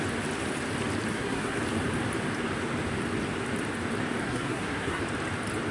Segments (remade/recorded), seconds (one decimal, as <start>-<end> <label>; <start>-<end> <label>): 0.0-1.1 recorded; 1.1-1.6 remade; 1.6-4.2 recorded; 4.2-5.0 remade; 5.0-5.7 recorded